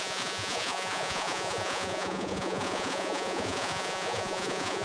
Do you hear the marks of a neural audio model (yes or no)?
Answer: yes